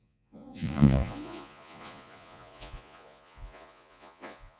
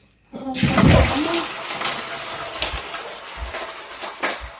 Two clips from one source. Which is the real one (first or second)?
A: second